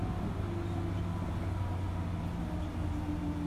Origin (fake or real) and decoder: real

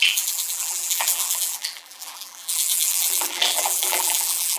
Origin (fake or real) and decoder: fake, vocoder, BigVGAN v2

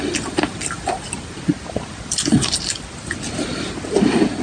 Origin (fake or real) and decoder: real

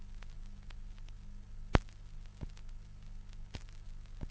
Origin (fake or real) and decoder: real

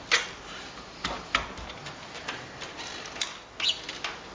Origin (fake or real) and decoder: real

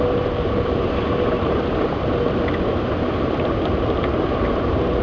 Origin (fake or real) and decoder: fake, vocoder, BigVGAN v2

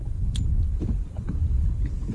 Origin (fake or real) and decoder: real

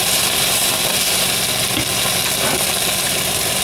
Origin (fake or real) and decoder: real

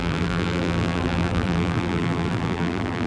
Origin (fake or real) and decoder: fake, vocoder, BigVGAN v2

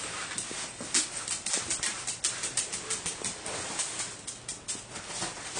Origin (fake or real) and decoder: real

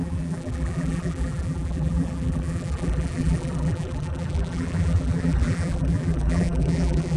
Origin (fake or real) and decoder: fake, vocoder, BigVGAN v2